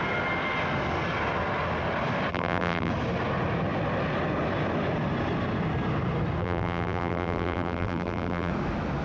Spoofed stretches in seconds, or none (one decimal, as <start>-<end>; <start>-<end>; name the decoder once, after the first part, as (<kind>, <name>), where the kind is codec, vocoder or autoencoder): 2.3-2.9 (vocoder, BigVGAN v2); 6.4-8.5